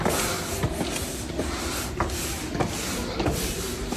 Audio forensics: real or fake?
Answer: real